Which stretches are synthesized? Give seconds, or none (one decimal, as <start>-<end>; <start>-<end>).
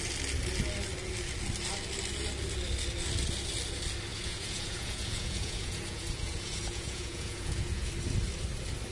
4.1-7.9